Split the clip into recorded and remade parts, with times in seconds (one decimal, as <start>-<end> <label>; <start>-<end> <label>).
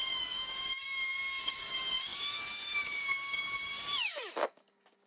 0.0-5.1 remade